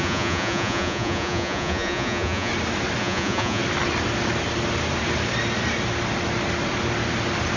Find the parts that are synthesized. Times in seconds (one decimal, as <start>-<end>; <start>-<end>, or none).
0.0-2.5; 3.0-3.6